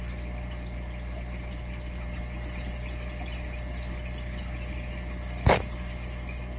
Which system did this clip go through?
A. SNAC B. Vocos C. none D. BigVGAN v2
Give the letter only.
C